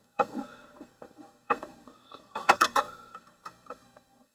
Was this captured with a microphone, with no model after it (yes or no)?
no